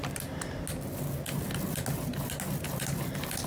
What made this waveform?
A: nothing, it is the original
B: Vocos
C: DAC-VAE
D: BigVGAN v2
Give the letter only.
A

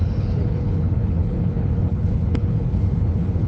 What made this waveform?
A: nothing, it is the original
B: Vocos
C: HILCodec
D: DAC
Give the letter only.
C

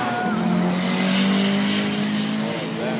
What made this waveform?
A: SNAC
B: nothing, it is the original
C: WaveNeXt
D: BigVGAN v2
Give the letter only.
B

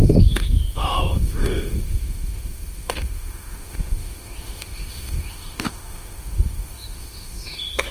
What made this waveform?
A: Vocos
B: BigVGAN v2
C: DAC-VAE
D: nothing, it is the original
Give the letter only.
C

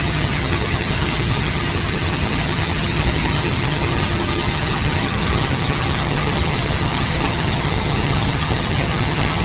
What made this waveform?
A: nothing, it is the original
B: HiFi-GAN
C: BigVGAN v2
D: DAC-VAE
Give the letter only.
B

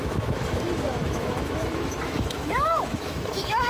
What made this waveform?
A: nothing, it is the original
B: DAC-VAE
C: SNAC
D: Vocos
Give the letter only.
B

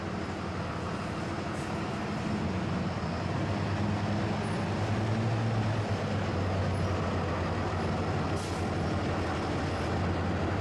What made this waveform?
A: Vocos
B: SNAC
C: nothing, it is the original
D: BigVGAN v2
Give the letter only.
C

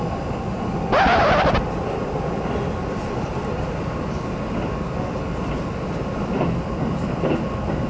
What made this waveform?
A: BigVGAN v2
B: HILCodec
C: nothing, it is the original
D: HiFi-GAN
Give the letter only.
C